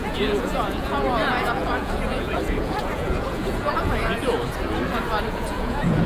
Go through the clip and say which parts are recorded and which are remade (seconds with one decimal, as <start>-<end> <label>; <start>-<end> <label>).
0.0-4.2 remade; 4.2-5.3 recorded; 5.3-6.1 remade